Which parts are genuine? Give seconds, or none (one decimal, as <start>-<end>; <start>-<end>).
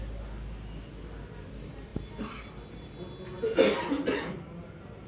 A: 0.0-5.1